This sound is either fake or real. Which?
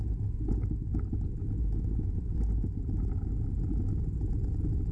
real